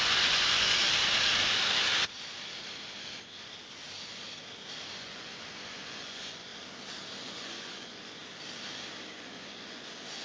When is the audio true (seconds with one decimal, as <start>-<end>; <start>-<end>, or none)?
0.8-4.9; 6.5-7.2; 8.2-9.2

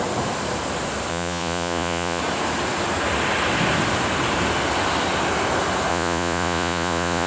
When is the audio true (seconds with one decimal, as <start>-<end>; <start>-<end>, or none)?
0.0-1.1; 2.2-5.9

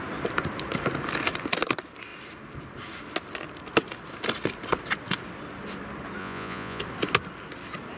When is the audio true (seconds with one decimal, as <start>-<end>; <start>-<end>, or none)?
0.0-6.2; 6.8-8.0

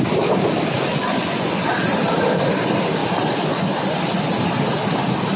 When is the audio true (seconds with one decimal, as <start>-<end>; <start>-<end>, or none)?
0.0-0.9; 1.6-5.4